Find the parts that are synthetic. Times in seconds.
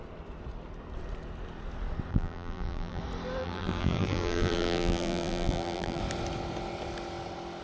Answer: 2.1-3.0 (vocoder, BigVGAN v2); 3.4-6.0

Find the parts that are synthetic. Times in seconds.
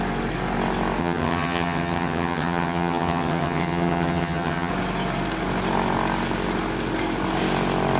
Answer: 1.0-4.7 (vocoder, HiFi-GAN)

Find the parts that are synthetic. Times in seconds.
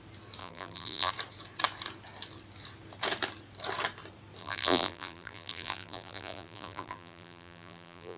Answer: 0.4-1.1 (vocoder, BigVGAN v2); 4.4-8.2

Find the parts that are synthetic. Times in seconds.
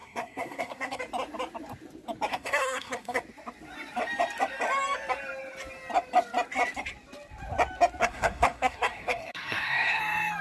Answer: 0.0-1.0 (codec, SNAC); 2.3-3.2; 8.0-10.0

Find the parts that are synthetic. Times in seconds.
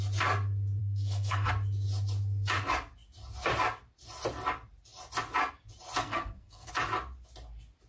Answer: 0.8-1.5 (codec, SNAC); 6.0-6.7